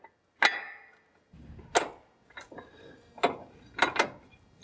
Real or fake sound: real